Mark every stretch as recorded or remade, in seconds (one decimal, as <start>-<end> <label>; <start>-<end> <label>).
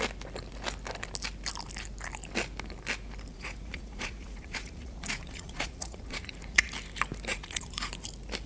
0.0-3.3 recorded; 3.3-6.7 remade; 6.7-7.3 recorded; 7.3-7.9 remade; 7.9-8.5 recorded